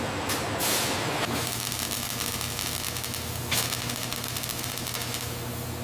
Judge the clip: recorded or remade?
recorded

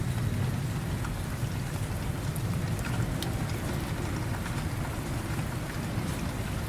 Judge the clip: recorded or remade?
recorded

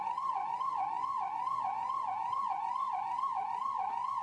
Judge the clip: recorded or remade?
remade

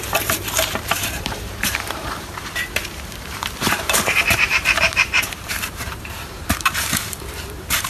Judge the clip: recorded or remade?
remade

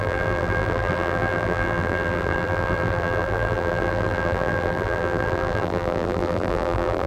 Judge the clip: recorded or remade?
remade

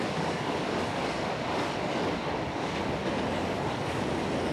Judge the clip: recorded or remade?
remade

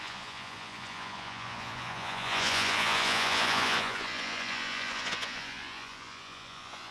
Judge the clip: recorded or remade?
remade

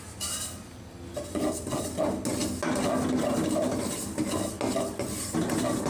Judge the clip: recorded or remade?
recorded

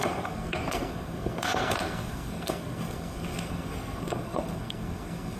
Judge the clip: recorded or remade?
remade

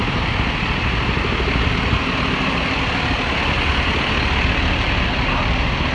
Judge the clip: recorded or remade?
recorded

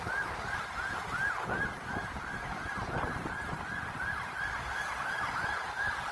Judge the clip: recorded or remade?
recorded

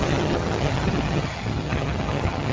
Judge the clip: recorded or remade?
remade